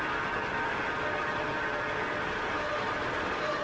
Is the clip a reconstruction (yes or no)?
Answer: no